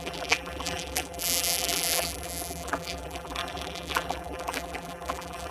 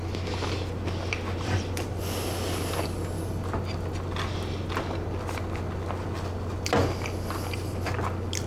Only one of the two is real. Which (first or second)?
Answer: second